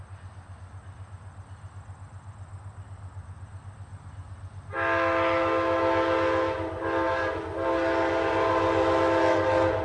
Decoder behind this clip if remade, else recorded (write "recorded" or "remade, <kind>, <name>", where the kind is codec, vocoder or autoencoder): recorded